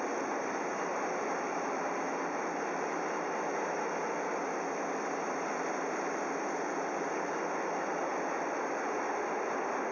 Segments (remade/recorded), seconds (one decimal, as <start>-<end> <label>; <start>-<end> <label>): 0.0-9.9 recorded

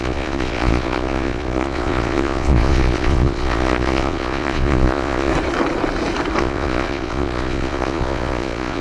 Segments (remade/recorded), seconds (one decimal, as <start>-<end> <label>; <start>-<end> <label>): 0.0-5.3 remade; 5.3-6.4 recorded; 6.4-8.8 remade

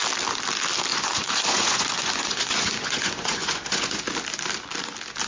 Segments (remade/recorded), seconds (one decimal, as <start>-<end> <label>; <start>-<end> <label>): 0.0-0.9 recorded; 0.9-4.0 remade; 4.0-5.3 recorded

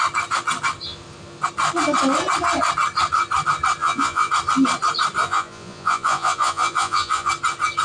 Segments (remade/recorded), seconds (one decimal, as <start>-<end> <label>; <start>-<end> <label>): 0.0-3.8 recorded; 3.8-4.3 remade; 4.3-5.2 recorded; 5.2-7.3 remade; 7.3-7.8 recorded

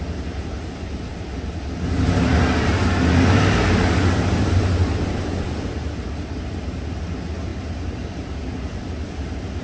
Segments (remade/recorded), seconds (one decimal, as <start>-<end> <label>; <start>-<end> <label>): 0.0-9.6 recorded

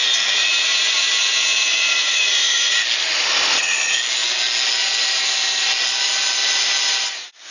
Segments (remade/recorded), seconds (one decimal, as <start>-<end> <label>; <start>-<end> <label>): 0.0-1.7 recorded; 1.7-2.7 remade; 2.7-7.5 recorded

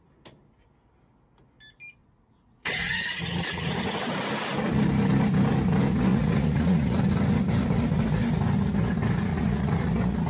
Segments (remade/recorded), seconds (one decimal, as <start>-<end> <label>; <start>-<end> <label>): 0.0-2.0 recorded; 2.0-3.8 remade; 3.8-6.1 recorded; 6.1-7.0 remade; 7.0-9.3 recorded; 9.3-9.9 remade; 9.9-10.3 recorded